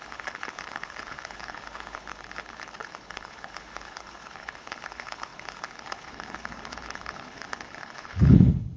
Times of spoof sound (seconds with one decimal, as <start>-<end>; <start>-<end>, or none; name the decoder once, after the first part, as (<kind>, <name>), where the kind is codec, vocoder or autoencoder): 0.0-8.8 (codec, HILCodec)